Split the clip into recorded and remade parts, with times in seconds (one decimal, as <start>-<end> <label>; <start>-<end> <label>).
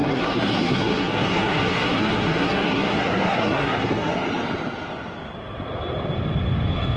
0.0-4.1 remade; 4.1-7.0 recorded